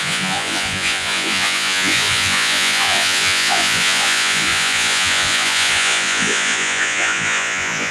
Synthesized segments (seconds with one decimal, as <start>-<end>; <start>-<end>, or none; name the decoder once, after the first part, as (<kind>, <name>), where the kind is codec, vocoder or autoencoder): 0.0-7.9 (vocoder, Vocos)